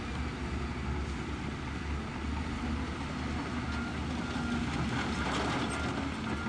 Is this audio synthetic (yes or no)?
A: no